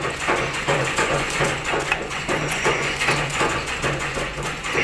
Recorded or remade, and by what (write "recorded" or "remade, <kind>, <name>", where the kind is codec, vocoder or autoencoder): remade, vocoder, Vocos